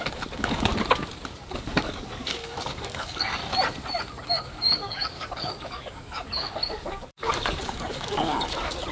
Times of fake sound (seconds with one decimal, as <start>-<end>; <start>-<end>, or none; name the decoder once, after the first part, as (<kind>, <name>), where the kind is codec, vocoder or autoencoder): 0.0-0.7 (codec, DAC); 1.3-3.4; 4.3-8.9